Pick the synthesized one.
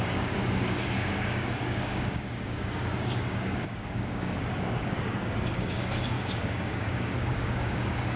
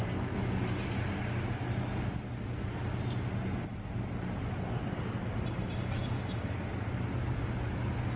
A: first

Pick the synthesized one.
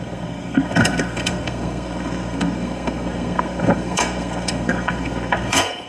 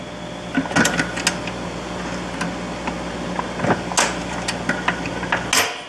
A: first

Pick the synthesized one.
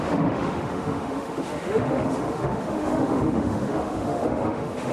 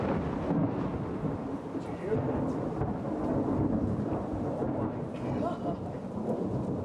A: first